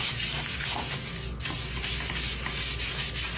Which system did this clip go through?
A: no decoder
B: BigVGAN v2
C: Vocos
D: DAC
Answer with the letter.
A